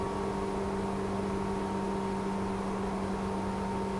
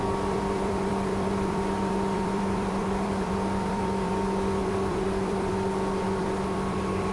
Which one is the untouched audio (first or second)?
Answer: first